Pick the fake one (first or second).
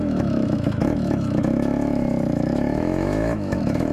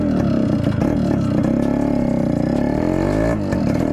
first